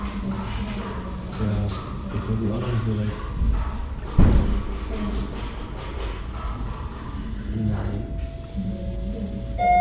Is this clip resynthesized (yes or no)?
no